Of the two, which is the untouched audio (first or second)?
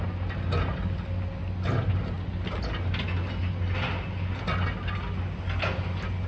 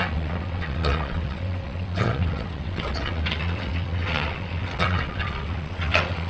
first